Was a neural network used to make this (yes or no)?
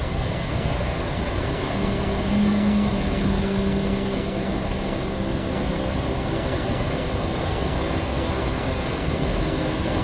yes